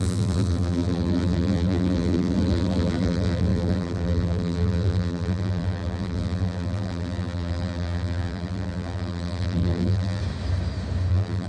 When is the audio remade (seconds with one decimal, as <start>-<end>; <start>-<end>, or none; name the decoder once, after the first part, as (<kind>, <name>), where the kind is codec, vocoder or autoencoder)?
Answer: 0.0-10.2 (vocoder, BigVGAN v2); 11.1-11.5